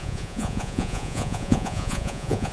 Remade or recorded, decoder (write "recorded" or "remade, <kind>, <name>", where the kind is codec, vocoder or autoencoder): remade, vocoder, Vocos